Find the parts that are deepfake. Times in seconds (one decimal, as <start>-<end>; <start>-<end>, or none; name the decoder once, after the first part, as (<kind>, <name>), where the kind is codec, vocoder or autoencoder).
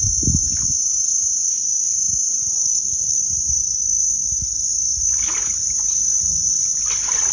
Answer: 2.6-3.2 (codec, SNAC)